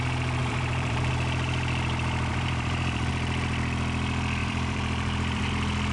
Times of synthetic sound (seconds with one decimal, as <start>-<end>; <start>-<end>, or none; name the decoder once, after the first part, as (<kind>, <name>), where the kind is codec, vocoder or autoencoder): 0.4-1.1 (vocoder, BigVGAN v2); 2.3-3.1; 4.4-5.5

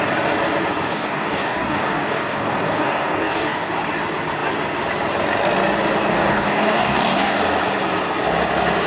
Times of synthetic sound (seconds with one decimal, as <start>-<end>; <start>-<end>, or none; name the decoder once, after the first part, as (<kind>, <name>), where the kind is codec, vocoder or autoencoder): 0.9-3.7 (codec, DAC); 6.1-7.4

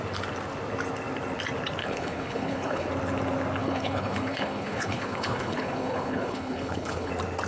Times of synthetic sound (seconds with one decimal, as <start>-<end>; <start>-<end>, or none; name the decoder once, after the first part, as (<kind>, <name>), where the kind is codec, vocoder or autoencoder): 1.8-2.9 (codec, HILCodec); 3.6-7.1

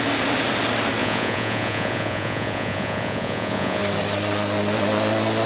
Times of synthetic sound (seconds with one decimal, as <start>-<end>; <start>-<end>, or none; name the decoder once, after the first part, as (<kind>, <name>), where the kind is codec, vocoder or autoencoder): 1.0-3.8 (vocoder, Vocos)

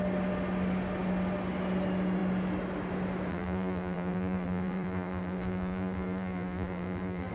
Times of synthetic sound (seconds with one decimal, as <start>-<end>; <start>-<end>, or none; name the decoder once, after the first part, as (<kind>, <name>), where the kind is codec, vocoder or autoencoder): 3.3-7.3 (vocoder, BigVGAN v2)

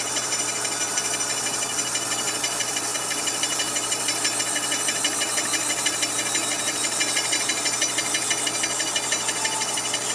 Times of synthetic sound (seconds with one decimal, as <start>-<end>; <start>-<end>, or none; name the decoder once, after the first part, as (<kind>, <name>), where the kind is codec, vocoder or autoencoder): none

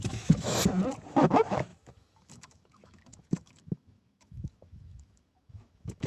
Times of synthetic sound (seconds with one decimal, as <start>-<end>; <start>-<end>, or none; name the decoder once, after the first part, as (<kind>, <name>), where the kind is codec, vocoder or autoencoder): 0.0-0.6 (autoencoder, DAC-VAE); 1.1-6.1